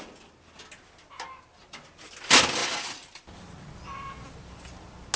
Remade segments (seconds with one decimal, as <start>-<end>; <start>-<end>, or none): none